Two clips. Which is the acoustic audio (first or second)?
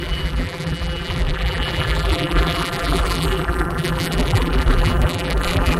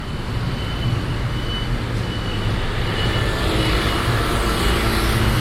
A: second